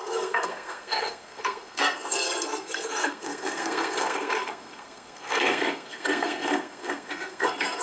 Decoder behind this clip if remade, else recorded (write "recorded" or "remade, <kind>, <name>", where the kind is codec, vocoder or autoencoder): remade, codec, SNAC